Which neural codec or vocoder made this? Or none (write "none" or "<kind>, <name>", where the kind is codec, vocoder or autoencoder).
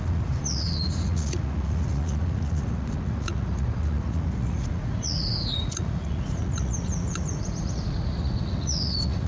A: vocoder, Vocos